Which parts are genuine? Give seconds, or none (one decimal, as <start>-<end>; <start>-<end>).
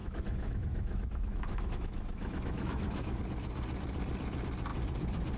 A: 3.2-5.4